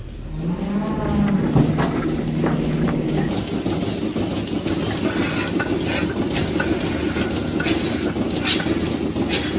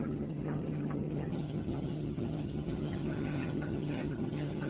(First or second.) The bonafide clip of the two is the first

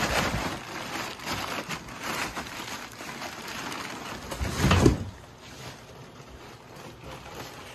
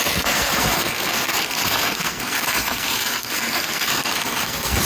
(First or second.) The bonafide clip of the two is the first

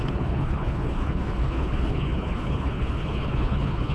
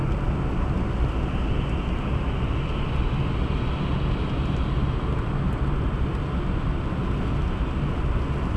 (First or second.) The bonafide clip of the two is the second